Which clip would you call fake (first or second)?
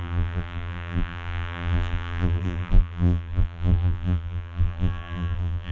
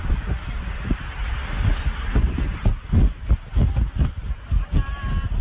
first